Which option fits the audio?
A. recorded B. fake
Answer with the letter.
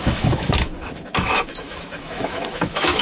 B